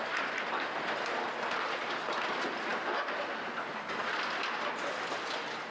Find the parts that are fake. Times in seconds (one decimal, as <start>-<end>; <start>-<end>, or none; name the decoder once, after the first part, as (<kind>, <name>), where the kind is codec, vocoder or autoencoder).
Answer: none